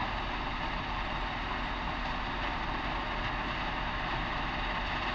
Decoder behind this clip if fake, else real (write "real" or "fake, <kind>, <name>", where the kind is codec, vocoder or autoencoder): real